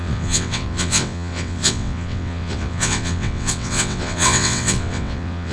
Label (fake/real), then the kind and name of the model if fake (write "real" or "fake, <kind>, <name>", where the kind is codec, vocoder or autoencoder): fake, vocoder, WaveNeXt